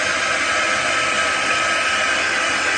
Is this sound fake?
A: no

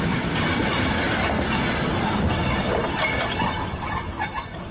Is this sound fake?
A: no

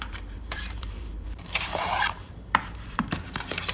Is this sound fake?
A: yes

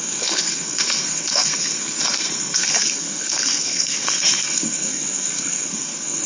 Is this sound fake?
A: yes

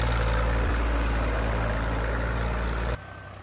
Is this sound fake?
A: no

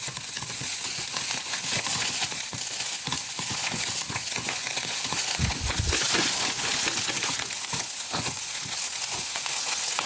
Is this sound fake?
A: yes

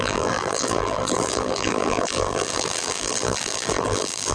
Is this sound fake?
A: yes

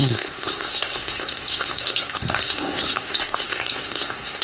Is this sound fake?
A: yes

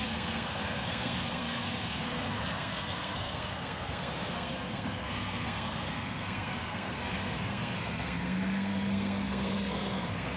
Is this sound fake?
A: yes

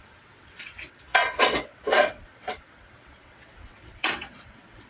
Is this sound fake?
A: yes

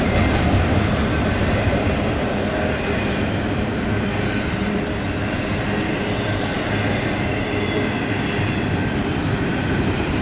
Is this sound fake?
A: yes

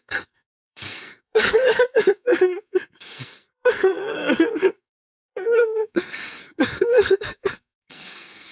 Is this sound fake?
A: yes